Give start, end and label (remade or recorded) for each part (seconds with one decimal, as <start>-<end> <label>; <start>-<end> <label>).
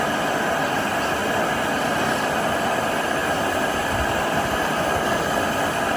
0.0-6.0 recorded